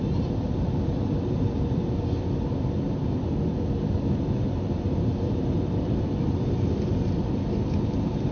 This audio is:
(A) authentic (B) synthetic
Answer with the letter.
A